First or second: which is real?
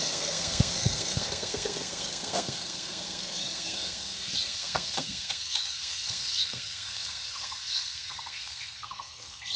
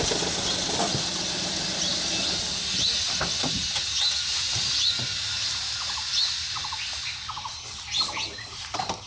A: second